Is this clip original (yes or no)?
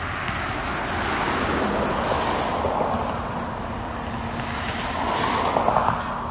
yes